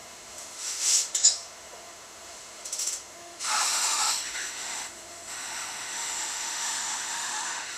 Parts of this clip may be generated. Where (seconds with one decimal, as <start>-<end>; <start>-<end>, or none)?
0.0-7.8